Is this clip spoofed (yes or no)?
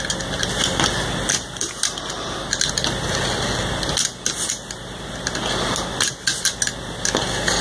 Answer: no